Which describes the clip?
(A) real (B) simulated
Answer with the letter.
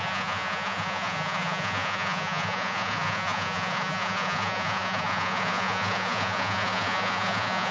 B